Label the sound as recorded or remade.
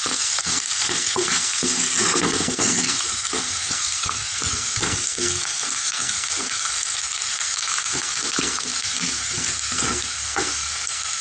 remade